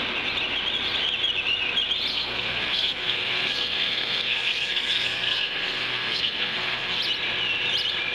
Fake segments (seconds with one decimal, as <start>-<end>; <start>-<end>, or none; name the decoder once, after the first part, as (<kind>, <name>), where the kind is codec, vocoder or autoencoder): 2.1-7.0 (codec, SNAC)